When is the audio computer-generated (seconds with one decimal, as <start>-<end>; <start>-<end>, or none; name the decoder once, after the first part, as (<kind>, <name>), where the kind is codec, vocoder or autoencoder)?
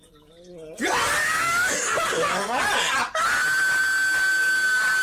1.2-2.6 (codec, DAC)